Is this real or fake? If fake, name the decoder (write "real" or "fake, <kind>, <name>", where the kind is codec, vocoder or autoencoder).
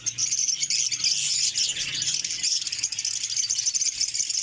real